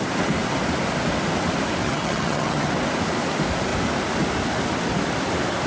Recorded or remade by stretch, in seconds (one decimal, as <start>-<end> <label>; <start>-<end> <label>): 0.0-1.8 recorded; 1.8-2.7 remade; 2.7-5.7 recorded